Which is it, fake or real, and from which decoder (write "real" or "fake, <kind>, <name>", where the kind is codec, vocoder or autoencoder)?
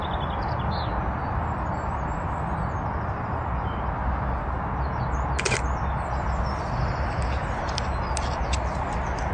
real